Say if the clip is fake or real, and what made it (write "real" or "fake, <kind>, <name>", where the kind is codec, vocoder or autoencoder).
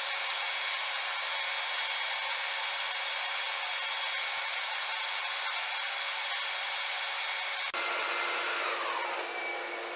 real